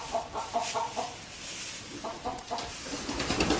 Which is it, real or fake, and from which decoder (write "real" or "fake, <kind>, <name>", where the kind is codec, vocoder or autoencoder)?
real